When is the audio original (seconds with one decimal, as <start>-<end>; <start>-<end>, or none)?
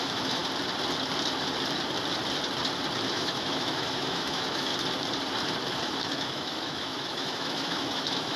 0.4-3.1; 4.7-6.0